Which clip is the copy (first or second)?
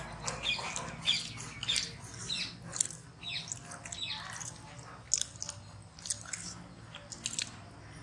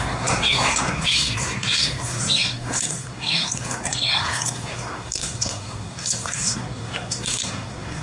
second